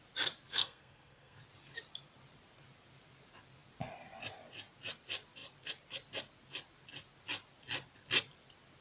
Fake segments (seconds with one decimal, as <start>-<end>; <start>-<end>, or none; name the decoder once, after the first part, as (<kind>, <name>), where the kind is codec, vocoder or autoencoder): 0.5-1.4 (codec, SNAC)